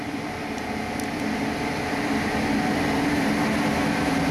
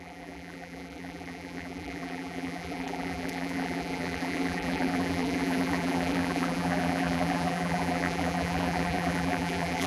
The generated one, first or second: second